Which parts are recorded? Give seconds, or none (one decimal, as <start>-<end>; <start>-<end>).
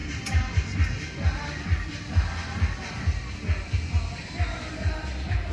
0.0-5.5